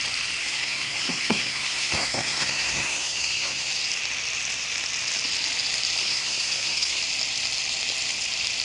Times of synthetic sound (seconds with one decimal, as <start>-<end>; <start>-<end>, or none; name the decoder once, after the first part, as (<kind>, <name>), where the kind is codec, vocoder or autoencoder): 0.4-3.7 (codec, SNAC); 6.0-7.0